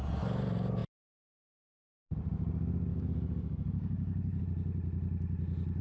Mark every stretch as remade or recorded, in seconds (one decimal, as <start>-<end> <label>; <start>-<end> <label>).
0.0-2.9 recorded; 2.9-4.4 remade; 4.4-5.8 recorded